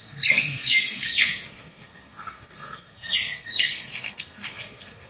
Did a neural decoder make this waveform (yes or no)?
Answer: yes